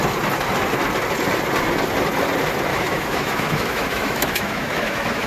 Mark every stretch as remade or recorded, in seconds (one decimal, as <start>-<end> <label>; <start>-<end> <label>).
0.0-2.7 recorded; 2.7-5.3 remade